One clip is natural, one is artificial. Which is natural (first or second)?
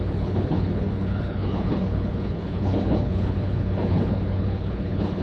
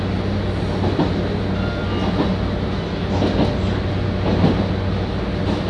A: second